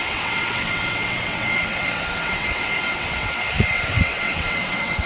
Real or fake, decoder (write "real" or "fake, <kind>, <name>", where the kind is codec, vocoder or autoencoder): fake, vocoder, WaveNeXt